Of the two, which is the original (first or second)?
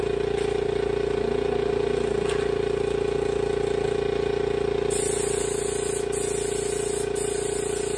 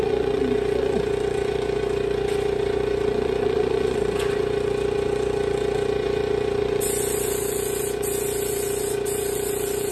first